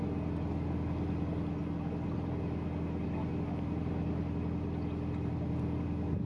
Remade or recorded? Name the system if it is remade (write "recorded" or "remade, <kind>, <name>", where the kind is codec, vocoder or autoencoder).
recorded